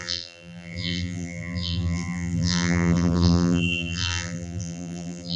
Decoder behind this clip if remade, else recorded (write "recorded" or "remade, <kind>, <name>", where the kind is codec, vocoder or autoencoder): remade, vocoder, BigVGAN v2